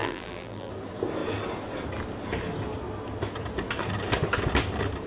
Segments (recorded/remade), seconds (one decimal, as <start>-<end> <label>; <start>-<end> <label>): 0.0-0.7 remade; 0.7-5.1 recorded